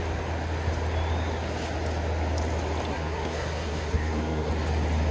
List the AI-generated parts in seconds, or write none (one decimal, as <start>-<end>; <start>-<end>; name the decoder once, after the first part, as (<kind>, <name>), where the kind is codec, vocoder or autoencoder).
2.9-4.5 (codec, SNAC)